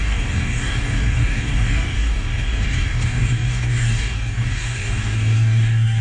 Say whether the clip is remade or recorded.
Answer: remade